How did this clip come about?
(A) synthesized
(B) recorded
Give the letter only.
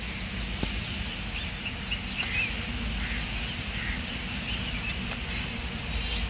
B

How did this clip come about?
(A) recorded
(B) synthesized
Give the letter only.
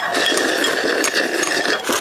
A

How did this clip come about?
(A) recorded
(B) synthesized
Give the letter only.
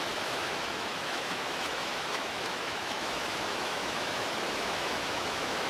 B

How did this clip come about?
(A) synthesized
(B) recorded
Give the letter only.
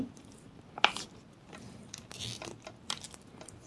B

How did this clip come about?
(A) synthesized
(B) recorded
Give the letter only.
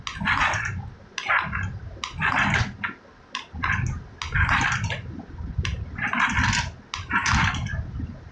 B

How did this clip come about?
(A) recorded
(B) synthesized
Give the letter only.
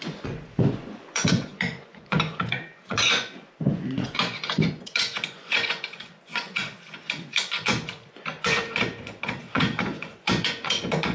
B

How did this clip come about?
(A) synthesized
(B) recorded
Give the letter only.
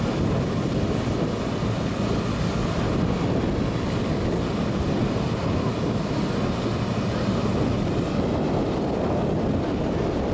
B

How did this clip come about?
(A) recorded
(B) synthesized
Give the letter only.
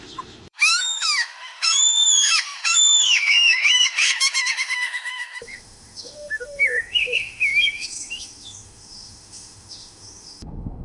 B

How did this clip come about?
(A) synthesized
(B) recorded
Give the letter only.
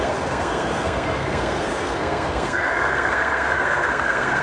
A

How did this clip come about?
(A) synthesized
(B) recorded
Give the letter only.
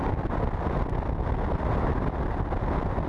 B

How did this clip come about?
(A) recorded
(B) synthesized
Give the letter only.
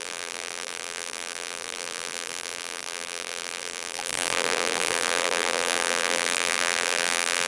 B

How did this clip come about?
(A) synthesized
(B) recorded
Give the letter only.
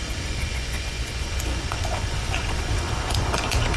A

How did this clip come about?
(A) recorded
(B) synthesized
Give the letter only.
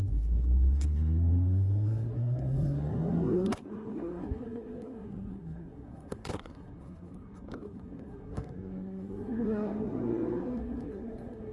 B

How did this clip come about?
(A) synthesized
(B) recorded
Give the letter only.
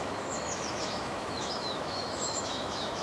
A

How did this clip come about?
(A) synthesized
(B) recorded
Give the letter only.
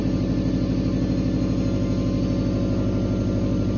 B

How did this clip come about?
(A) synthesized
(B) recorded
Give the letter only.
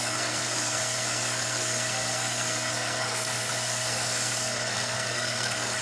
A